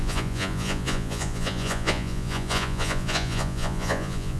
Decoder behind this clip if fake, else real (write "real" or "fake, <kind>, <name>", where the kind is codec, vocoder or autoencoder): fake, vocoder, Vocos